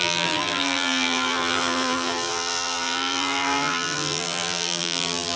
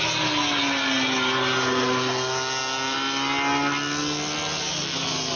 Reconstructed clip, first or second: first